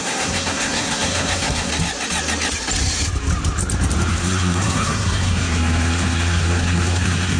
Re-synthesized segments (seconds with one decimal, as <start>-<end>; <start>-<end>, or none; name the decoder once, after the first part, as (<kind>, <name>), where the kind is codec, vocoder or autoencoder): 0.0-1.7 (codec, SNAC); 4.1-7.4